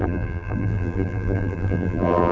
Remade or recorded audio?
remade